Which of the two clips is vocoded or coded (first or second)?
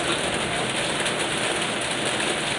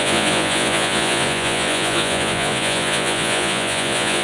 second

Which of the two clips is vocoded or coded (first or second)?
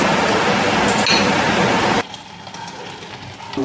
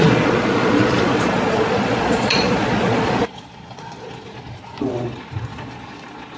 second